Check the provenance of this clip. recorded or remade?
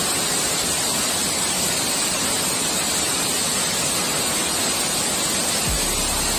recorded